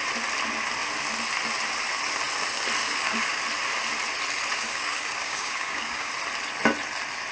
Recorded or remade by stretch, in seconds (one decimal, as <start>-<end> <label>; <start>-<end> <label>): 0.0-2.8 recorded; 2.8-3.4 remade; 3.4-4.5 recorded; 4.5-6.1 remade; 6.1-7.3 recorded